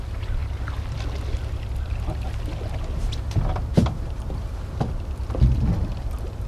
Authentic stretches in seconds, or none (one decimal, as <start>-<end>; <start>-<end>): 0.0-6.5